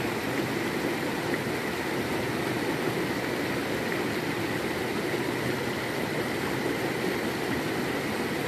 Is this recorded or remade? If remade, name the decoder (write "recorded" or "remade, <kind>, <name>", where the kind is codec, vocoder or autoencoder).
recorded